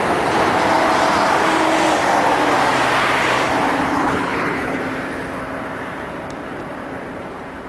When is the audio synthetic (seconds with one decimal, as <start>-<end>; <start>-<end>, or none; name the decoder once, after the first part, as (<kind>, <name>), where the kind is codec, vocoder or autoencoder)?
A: 3.9-4.8 (codec, HILCodec)